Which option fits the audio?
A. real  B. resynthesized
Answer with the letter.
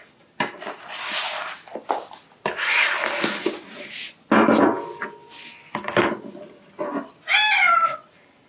A